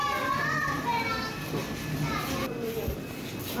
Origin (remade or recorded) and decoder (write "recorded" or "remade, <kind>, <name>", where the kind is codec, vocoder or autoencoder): recorded